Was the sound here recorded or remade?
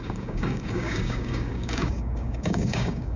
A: remade